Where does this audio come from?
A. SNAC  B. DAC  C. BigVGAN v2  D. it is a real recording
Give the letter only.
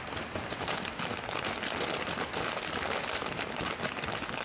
D